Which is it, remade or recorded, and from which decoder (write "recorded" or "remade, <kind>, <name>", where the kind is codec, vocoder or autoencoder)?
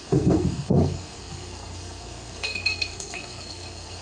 remade, codec, SNAC